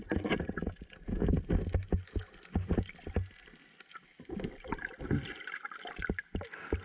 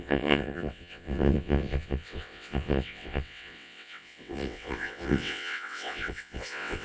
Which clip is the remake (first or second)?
second